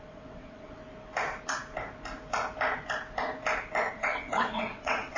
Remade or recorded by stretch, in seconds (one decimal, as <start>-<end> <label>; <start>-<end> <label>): 0.0-0.8 remade; 0.8-3.9 recorded; 3.9-5.2 remade